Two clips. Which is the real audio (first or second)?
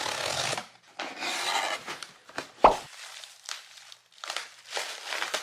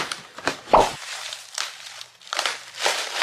first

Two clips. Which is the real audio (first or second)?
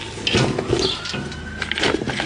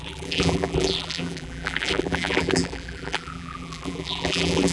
first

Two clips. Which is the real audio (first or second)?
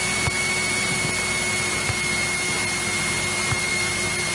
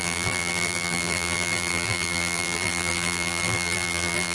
first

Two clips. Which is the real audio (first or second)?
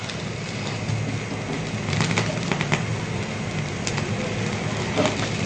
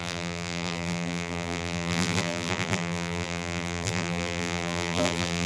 first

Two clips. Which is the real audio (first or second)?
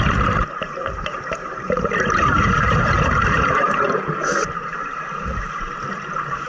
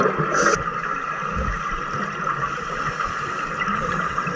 second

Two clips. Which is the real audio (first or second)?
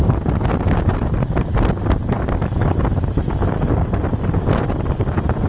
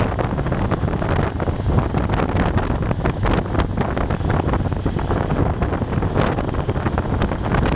second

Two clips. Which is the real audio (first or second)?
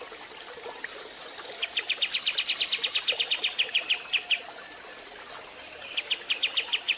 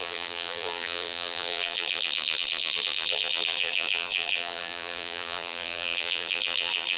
first